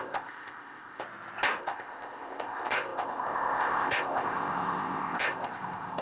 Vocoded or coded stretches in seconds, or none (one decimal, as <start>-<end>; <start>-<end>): 0.0-1.0; 1.6-6.0